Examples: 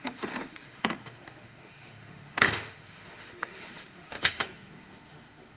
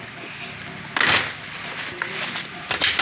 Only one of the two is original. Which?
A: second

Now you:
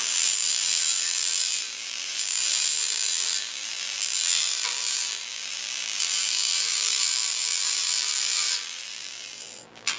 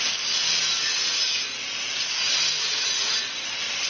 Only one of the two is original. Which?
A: second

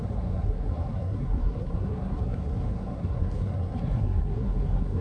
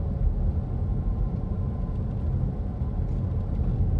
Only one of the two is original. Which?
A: second